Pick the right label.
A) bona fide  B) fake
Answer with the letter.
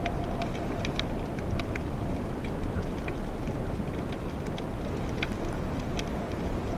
A